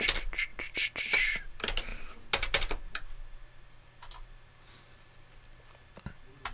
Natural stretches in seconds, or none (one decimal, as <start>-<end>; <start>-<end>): 0.0-6.5